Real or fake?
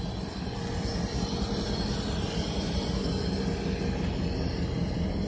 real